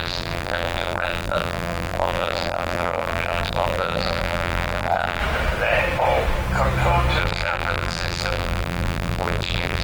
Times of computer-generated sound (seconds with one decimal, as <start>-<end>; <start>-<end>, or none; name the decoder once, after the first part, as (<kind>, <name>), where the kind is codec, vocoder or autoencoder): 0.0-5.2 (vocoder, BigVGAN v2); 7.2-9.8